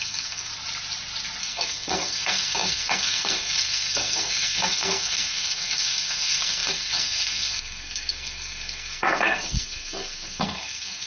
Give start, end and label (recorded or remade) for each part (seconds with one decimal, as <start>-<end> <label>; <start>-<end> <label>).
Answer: 0.0-0.5 remade; 0.5-1.4 recorded; 1.4-11.1 remade